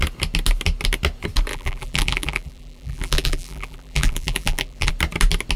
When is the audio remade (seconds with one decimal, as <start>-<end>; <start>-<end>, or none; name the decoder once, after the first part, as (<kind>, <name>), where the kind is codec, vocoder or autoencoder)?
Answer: 1.5-4.9 (vocoder, BigVGAN v2)